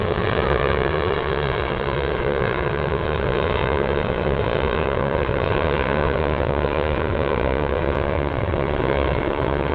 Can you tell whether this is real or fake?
fake